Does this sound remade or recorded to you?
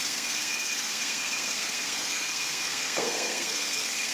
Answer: remade